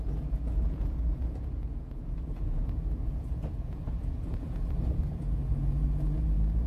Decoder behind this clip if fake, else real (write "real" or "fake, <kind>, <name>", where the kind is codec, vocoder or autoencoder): fake, vocoder, Vocos